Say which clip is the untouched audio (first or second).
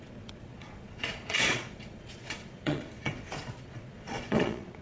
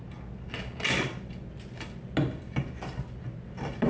second